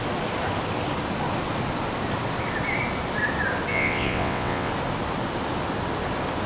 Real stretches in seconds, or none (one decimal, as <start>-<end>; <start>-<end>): 0.0-3.7; 4.7-6.5